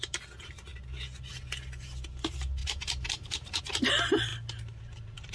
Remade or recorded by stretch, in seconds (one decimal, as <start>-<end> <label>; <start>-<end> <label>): 0.0-2.6 recorded; 2.6-3.6 remade; 3.6-5.3 recorded